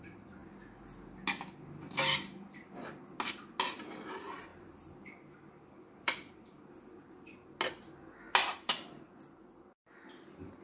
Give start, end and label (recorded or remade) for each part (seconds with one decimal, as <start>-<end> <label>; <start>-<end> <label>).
0.0-4.5 recorded; 4.5-6.8 remade; 6.8-10.6 recorded